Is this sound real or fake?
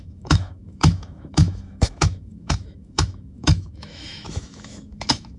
fake